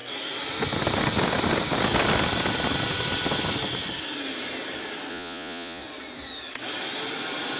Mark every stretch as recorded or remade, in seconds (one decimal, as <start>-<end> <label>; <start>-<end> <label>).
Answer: 0.0-5.1 recorded; 5.1-5.8 remade; 5.8-7.6 recorded